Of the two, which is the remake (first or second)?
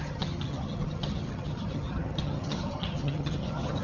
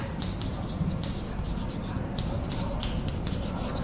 first